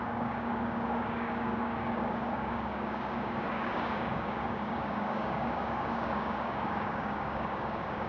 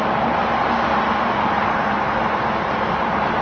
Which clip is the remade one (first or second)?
first